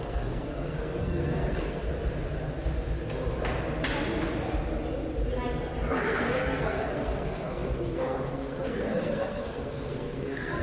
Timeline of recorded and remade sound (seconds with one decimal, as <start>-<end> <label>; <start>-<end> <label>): 0.0-1.9 remade; 1.9-6.0 recorded; 6.0-10.6 remade